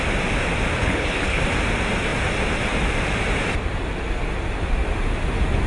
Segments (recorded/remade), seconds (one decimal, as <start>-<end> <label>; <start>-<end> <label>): 0.0-0.8 recorded; 0.8-1.4 remade; 1.4-5.7 recorded